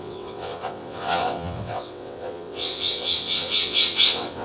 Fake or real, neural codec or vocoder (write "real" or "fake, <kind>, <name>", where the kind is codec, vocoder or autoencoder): fake, vocoder, WaveNeXt